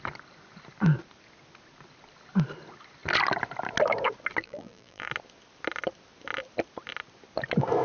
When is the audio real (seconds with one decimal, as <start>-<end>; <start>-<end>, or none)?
0.0-4.4; 5.1-7.8